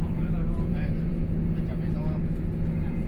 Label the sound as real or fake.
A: fake